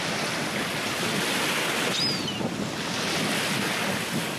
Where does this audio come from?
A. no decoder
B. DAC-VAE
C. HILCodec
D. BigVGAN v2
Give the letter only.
A